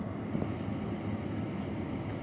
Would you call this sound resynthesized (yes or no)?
no